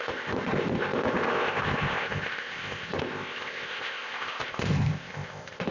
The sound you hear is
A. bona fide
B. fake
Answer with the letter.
B